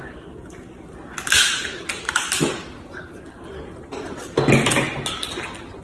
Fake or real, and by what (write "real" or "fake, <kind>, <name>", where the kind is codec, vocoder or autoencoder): real